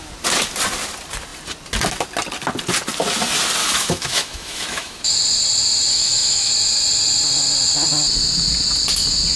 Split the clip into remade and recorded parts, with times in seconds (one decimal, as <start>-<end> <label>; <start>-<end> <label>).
0.0-3.6 recorded; 3.6-5.1 remade; 5.1-5.9 recorded; 5.9-6.5 remade; 6.5-9.4 recorded